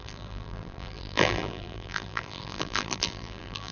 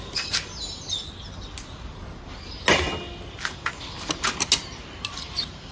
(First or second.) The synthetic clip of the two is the first